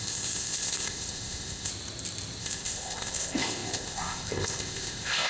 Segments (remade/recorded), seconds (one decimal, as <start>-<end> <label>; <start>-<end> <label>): 0.0-1.7 remade; 1.7-2.4 recorded; 2.4-5.3 remade